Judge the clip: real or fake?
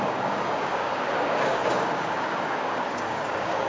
fake